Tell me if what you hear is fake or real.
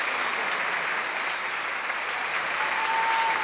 real